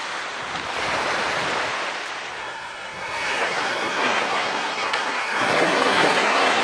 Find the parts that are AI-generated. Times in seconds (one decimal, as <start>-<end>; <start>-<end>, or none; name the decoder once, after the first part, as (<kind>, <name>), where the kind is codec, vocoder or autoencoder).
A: 2.4-6.6 (codec, SNAC)